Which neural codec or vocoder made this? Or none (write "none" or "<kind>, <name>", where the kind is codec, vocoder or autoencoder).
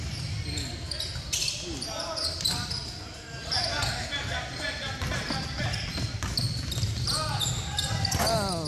none